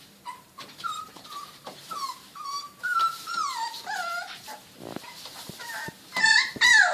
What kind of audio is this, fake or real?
fake